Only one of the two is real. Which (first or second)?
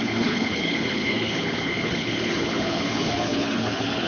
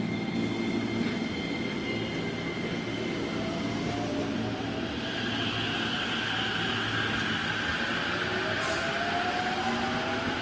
second